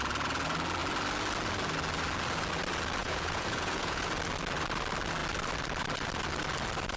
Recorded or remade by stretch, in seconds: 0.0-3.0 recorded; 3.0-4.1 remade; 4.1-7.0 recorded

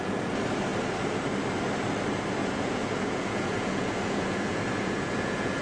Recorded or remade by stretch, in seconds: 0.0-2.4 recorded; 2.4-5.6 remade

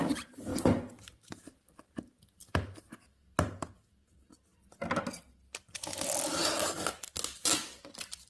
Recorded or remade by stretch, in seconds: 0.0-0.5 recorded; 0.5-2.8 remade; 2.8-8.3 recorded